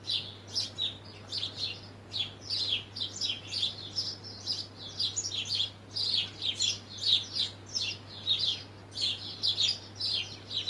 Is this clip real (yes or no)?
yes